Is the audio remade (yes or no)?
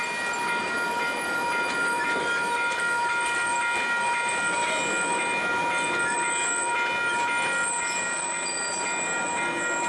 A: no